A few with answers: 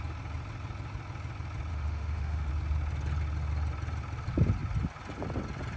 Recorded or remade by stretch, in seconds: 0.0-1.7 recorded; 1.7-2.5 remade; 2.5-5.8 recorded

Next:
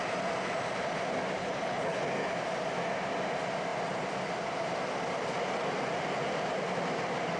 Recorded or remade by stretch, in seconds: 0.0-1.4 recorded; 1.4-2.0 remade; 2.0-7.4 recorded

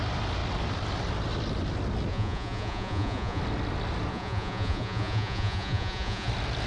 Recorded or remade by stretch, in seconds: 0.0-2.1 recorded; 2.1-3.4 remade; 3.4-4.1 recorded; 4.1-6.3 remade; 6.3-6.7 recorded

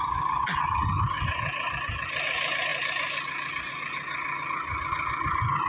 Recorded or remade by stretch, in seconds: 0.0-5.7 recorded

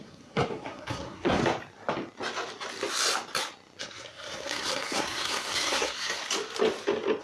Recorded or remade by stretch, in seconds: 0.0-1.4 remade; 1.4-3.8 recorded; 3.8-6.2 remade; 6.2-7.2 recorded

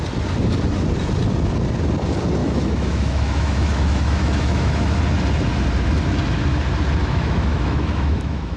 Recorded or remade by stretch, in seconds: 0.0-2.4 recorded; 2.4-5.0 remade; 5.0-7.0 recorded; 7.0-8.6 remade